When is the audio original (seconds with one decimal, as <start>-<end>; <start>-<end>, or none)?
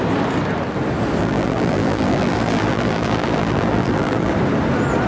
0.0-1.2; 4.3-5.1